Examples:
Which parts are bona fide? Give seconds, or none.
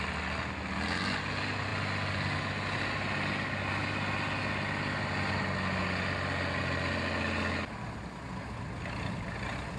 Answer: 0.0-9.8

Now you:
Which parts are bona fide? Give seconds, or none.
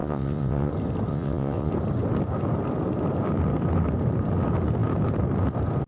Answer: 0.7-1.1; 1.7-5.9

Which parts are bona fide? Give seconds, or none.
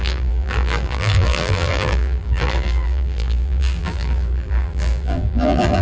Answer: none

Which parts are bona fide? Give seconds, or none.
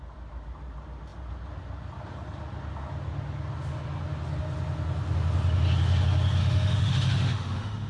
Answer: 0.0-6.4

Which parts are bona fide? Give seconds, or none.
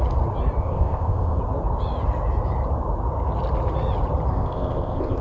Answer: 0.0-0.6; 1.4-4.3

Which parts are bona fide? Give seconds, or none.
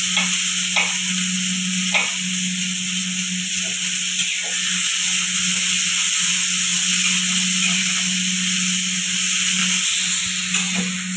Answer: 0.0-11.2